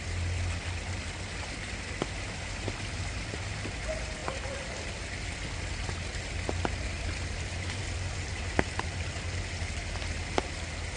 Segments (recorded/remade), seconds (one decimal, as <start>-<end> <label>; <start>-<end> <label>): 0.0-11.0 recorded